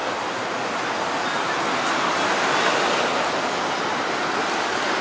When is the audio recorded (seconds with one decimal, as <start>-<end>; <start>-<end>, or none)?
0.0-5.0